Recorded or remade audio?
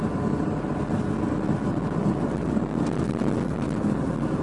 recorded